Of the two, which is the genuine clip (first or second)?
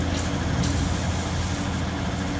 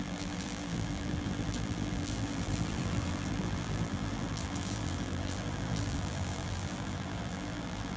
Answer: first